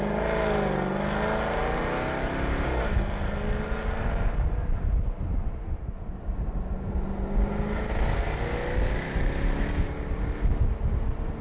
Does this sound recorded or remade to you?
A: recorded